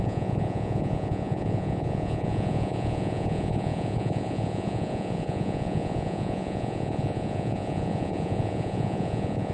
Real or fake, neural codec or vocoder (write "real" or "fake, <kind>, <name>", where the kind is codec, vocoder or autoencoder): fake, vocoder, Vocos